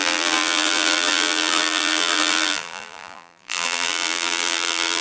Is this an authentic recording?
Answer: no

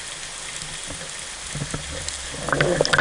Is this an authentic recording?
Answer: yes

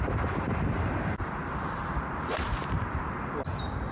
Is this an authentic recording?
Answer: no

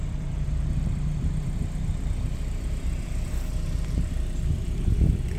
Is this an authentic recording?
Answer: no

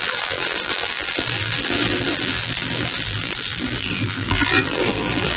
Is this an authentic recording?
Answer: no